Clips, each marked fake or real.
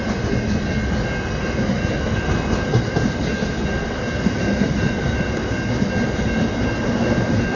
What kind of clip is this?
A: real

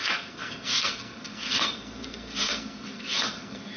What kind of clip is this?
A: fake